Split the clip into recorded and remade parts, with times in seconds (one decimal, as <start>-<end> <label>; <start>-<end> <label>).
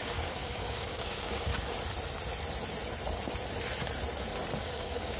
0.0-1.5 remade; 1.5-4.6 recorded; 4.6-5.2 remade